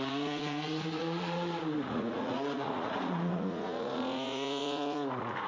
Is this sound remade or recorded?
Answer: remade